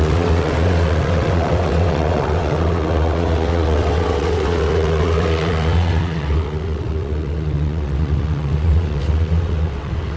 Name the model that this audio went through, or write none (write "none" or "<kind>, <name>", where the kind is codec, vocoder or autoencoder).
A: vocoder, WaveNeXt